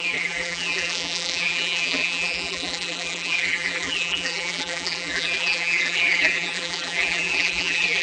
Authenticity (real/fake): fake